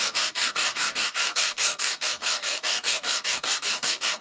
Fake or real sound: fake